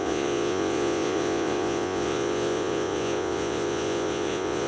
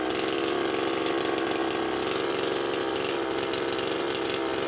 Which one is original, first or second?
second